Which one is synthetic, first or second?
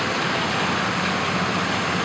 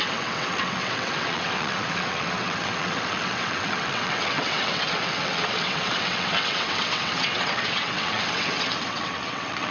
second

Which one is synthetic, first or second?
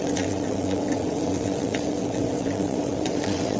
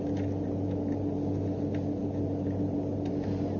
first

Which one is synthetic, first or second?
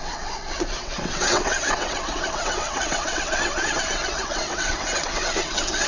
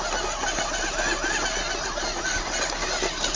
first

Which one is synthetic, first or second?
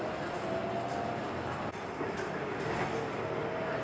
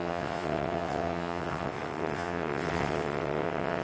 second